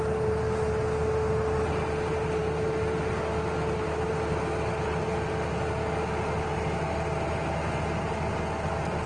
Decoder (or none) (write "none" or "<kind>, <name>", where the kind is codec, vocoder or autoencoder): none